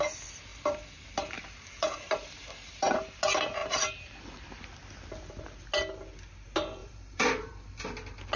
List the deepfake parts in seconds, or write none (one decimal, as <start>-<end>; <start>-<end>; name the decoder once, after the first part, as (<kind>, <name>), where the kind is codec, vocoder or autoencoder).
0.5-3.2 (vocoder, BigVGAN v2); 3.6-4.2; 6.8-7.8